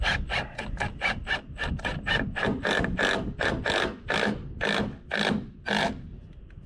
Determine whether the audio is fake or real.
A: real